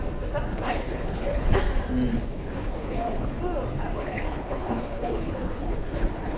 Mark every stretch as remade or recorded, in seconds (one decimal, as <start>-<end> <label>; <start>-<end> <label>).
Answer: 0.0-0.5 recorded; 0.5-1.6 remade; 1.6-2.1 recorded; 2.1-3.4 remade; 3.4-4.0 recorded; 4.0-6.4 remade